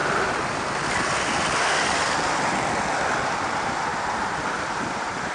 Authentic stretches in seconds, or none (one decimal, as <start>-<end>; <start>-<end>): 3.9-4.5